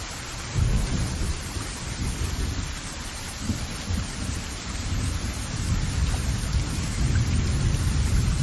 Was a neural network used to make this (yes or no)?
yes